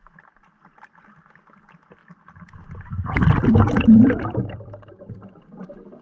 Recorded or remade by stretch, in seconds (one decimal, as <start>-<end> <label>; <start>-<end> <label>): 0.0-2.0 recorded; 2.0-5.6 remade; 5.6-6.0 recorded